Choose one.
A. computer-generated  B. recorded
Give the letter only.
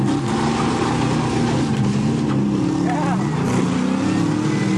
B